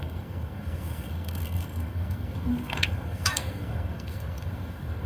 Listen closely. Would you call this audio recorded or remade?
remade